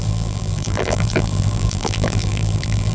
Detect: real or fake fake